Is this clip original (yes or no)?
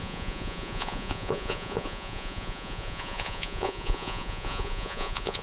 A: no